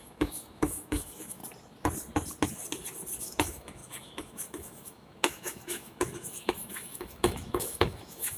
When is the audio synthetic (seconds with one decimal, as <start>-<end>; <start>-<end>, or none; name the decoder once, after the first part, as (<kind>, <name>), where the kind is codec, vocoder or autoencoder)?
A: 0.0-1.4 (autoencoder, DAC-VAE); 3.2-8.4